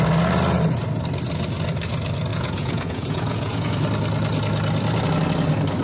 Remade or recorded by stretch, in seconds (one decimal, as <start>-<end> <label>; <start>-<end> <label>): 0.0-2.3 recorded; 2.3-3.7 remade; 3.7-5.8 recorded